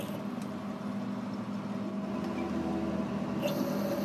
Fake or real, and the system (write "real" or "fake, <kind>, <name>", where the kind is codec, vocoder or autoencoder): real